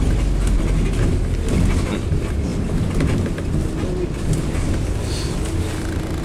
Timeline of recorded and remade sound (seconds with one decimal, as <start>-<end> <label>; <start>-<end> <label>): 0.0-6.2 recorded